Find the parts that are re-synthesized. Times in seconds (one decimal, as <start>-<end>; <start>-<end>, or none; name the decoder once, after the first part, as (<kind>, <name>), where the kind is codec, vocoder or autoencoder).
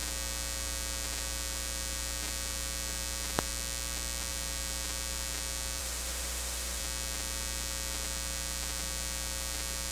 5.8-6.8 (autoencoder, DAC-VAE)